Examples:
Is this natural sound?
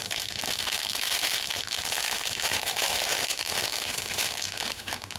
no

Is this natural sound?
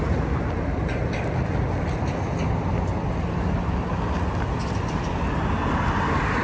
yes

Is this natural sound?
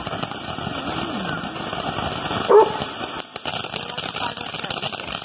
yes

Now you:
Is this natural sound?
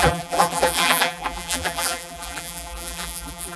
no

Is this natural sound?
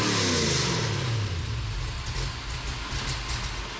yes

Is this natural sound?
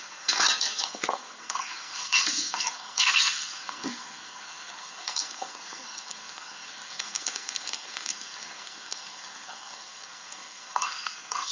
no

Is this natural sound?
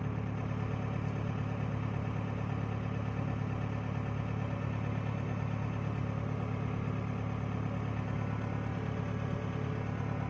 yes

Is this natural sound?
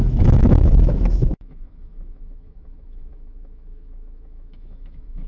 no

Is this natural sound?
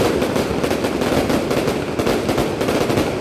yes